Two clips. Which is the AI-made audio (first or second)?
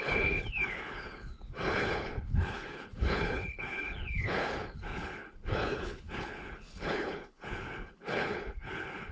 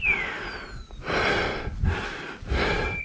first